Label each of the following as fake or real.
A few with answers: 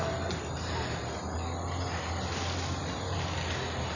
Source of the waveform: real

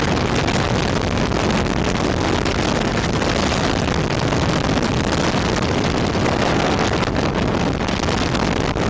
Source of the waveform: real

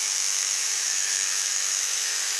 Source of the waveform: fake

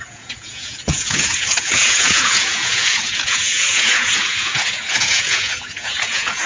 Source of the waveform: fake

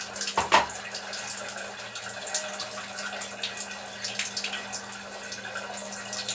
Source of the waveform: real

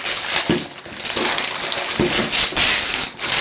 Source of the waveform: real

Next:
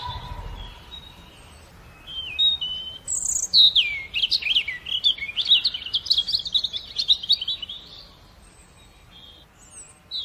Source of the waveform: real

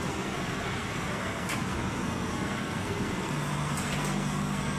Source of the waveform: fake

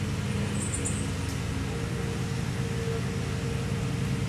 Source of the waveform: real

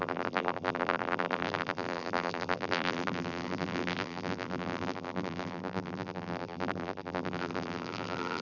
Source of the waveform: fake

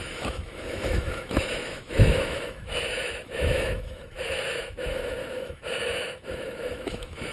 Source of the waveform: fake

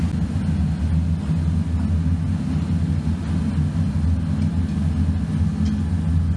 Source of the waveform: real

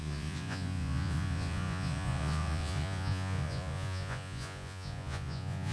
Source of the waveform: fake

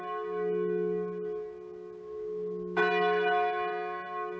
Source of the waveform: real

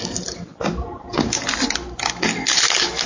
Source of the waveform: real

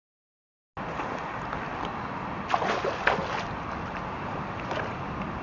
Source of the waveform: real